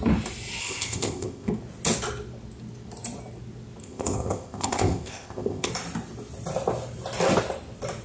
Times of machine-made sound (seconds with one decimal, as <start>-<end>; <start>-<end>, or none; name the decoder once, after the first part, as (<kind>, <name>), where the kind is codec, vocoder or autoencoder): 0.6-1.5 (codec, ZipCodec); 3.8-5.7

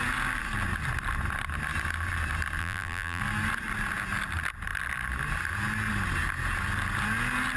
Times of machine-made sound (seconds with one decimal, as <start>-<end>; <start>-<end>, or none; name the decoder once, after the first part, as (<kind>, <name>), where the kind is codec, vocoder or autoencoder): 2.6-3.2 (vocoder, BigVGAN v2)

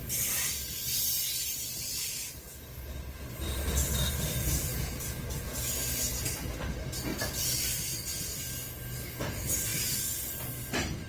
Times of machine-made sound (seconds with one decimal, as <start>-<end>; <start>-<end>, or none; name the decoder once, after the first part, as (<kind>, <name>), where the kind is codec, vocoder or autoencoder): 1.4-5.4 (vocoder, BigVGAN v2); 7.1-7.8; 9.7-10.4

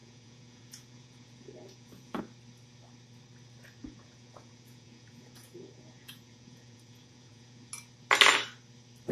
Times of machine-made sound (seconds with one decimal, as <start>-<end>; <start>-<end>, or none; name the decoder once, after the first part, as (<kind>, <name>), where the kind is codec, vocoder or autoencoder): 0.0-2.2 (vocoder, Vocos); 3.8-7.7

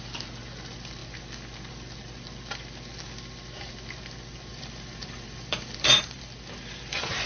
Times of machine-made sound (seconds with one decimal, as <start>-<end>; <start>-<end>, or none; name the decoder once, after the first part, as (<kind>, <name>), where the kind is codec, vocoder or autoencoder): 4.5-7.3 (vocoder, BigVGAN v2)

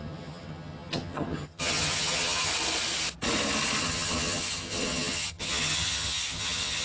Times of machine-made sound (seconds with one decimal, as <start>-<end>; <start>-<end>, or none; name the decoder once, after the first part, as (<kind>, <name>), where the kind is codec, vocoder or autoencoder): 0.0-2.5 (vocoder, HiFi-GAN); 3.8-6.8

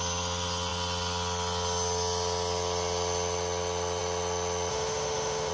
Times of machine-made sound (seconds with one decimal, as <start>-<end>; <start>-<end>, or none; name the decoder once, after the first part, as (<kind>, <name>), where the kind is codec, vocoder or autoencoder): 4.7-5.5 (autoencoder, DAC-VAE)

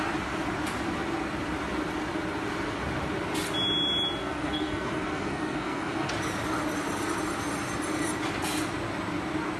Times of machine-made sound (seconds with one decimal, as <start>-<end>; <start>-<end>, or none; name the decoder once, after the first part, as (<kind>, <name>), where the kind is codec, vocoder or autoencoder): 4.2-6.1 (codec, SNAC)